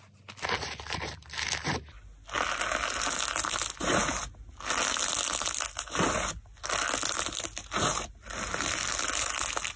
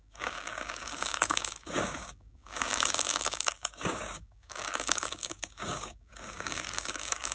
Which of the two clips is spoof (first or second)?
second